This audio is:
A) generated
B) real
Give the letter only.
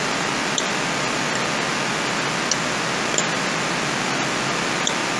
B